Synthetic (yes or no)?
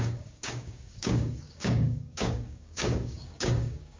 yes